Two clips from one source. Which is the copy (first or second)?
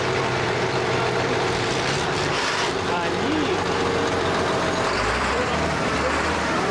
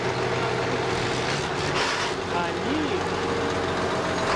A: first